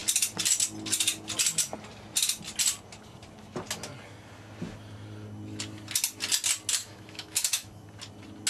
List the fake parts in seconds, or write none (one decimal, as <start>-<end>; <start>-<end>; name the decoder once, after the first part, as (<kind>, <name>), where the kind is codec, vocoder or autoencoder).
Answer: 6.8-7.8 (autoencoder, DAC-VAE)